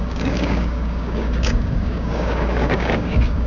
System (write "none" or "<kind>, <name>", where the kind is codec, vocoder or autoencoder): codec, DAC